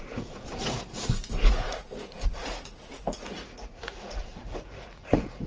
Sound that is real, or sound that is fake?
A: fake